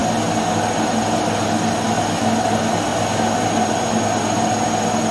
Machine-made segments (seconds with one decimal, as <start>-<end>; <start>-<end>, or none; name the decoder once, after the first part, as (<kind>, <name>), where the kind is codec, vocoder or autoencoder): none